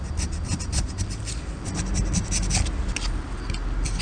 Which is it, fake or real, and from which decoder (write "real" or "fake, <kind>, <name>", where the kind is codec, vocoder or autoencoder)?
real